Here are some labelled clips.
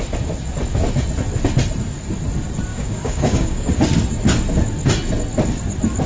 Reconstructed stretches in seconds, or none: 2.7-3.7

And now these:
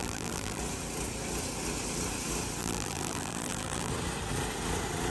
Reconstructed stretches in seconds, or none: 0.0-0.6; 2.6-3.9

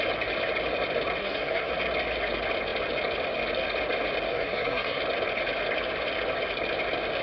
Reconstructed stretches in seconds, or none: 1.2-1.7; 4.3-5.0

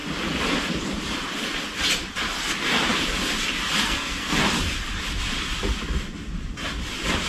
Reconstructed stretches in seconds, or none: 3.8-4.4